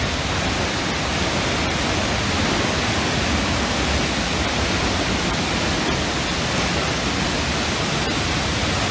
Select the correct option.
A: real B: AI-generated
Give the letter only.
A